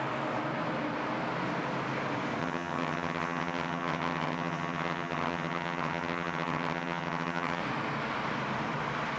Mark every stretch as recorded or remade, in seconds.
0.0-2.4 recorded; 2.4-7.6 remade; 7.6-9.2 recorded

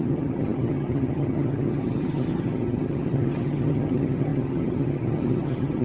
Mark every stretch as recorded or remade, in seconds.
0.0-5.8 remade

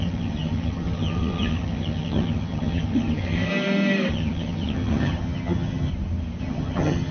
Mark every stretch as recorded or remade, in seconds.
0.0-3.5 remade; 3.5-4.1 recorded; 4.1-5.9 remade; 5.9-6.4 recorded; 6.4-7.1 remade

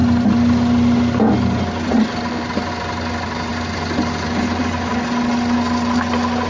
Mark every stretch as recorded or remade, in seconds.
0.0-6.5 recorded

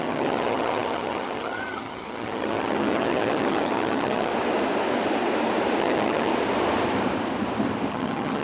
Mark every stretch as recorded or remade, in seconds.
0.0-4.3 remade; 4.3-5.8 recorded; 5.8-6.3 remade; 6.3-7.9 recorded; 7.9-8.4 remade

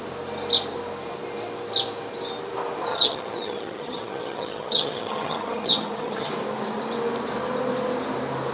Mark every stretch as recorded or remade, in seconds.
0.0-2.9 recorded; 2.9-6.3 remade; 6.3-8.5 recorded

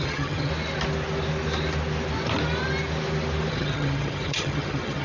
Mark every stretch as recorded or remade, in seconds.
0.0-0.5 remade; 0.5-3.5 recorded; 3.5-5.0 remade